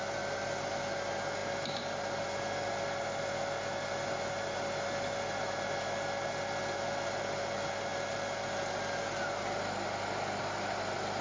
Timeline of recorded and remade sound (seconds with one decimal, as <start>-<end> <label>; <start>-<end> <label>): 0.0-11.2 recorded